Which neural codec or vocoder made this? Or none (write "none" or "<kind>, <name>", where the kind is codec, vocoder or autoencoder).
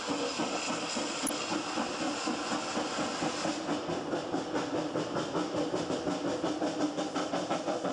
none